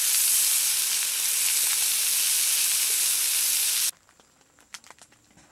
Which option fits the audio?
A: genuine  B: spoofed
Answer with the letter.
A